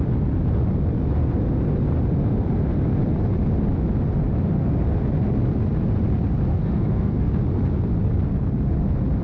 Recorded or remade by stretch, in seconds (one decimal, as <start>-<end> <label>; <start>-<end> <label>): 0.0-6.5 recorded; 6.5-7.3 remade; 7.3-9.2 recorded